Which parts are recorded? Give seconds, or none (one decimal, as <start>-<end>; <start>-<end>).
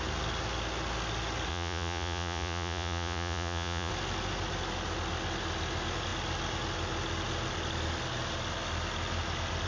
0.0-1.5; 3.9-9.7